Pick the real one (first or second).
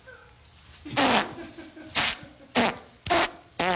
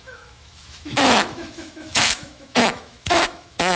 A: first